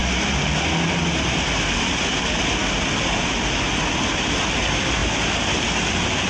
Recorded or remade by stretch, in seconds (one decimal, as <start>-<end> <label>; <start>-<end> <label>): 0.0-6.3 recorded